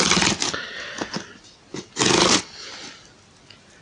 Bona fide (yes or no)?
yes